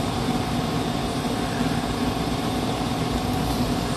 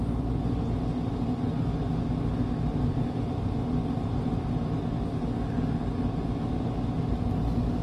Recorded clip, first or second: second